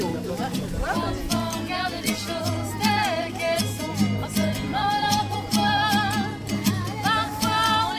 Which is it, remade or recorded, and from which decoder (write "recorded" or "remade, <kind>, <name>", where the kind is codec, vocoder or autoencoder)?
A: remade, vocoder, BigVGAN v2